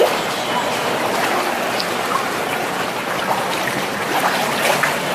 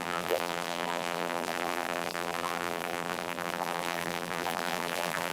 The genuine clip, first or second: first